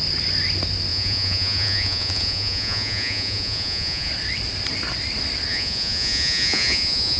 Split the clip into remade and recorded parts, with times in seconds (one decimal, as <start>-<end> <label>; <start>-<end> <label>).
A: 0.0-0.9 recorded; 0.9-4.1 remade; 4.1-5.5 recorded; 5.5-7.2 remade